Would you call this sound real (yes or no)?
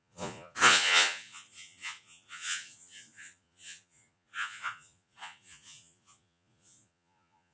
no